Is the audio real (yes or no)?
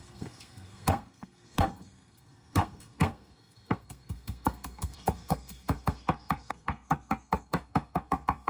no